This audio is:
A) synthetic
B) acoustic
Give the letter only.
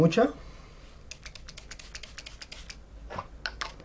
B